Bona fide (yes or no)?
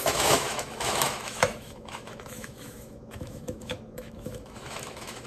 no